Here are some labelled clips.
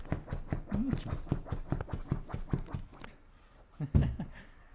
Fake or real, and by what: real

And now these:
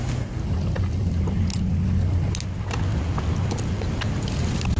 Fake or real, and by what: real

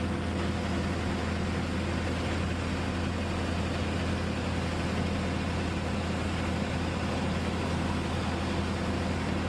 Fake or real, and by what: real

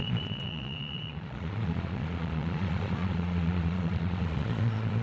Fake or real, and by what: fake, vocoder, Vocos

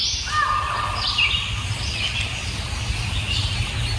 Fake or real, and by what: real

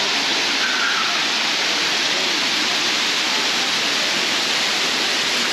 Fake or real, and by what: real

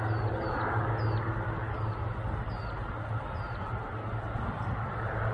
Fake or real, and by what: real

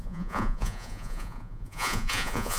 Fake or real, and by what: fake, vocoder, Vocos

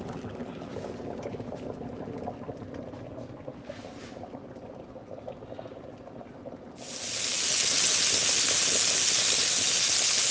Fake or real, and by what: real